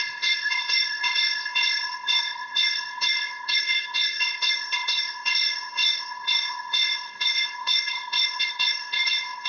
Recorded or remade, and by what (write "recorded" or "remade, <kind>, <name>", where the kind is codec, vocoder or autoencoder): remade, codec, ZipCodec